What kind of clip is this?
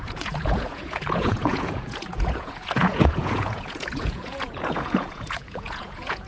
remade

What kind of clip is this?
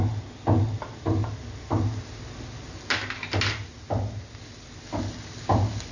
recorded